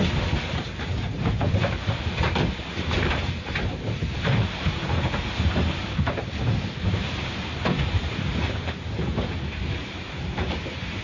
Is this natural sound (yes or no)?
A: no